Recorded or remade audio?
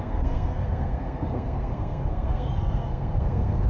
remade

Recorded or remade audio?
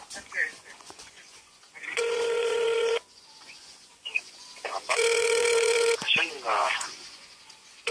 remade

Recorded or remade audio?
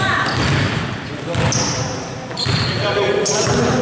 recorded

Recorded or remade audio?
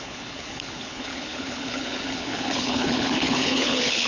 remade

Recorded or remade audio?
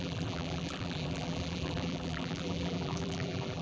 remade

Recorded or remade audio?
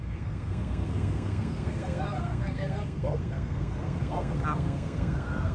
remade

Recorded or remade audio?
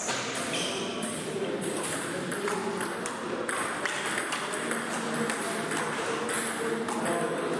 recorded